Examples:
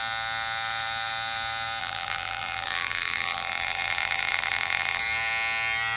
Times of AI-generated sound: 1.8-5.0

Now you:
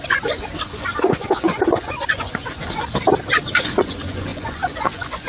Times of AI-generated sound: 0.0-2.8; 3.3-5.3

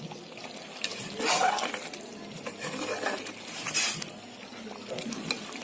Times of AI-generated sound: none

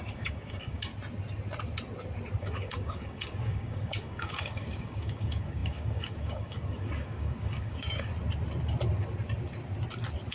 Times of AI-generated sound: 0.0-0.9; 2.4-8.1

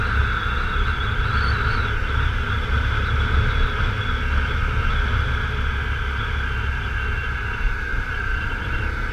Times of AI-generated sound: none